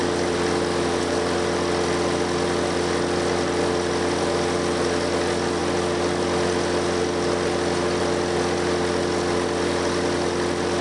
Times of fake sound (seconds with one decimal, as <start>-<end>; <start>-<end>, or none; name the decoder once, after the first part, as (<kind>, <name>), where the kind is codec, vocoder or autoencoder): none